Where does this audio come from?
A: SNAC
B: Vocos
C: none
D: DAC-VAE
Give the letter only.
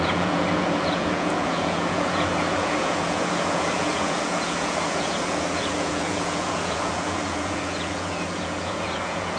B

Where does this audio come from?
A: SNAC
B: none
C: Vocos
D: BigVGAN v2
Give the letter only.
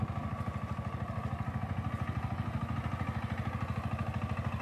B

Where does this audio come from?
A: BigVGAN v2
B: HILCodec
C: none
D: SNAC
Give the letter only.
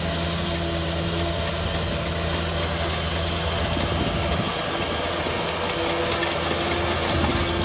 C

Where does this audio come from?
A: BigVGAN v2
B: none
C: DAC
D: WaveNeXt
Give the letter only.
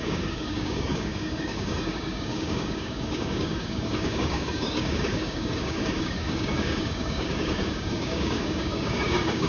C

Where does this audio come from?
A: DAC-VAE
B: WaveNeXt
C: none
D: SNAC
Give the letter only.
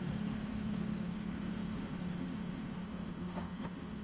A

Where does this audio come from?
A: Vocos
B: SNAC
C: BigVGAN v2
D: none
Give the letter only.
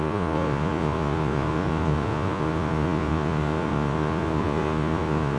A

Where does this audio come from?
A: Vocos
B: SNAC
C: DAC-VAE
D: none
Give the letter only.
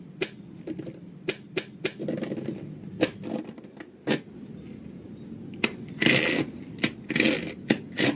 D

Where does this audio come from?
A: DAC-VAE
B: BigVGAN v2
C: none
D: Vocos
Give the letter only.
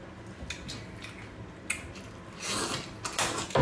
C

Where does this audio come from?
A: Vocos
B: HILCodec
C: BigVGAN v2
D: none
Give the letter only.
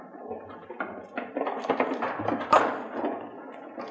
D